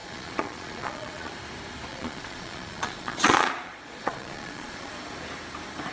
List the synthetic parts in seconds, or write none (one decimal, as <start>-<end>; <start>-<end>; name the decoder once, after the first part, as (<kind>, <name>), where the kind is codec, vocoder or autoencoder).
0.0-1.3 (vocoder, Vocos); 1.9-4.9